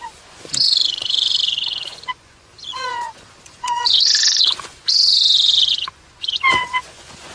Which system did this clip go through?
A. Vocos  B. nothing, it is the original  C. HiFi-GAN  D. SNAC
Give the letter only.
A